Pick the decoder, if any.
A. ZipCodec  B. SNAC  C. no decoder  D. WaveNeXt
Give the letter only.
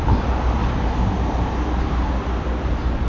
C